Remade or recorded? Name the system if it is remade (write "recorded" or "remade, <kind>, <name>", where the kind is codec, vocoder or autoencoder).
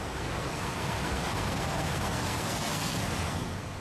remade, codec, SNAC